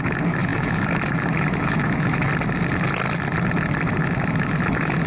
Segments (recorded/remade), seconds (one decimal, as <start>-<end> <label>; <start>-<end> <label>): 0.0-2.3 remade; 2.3-4.0 recorded; 4.0-5.1 remade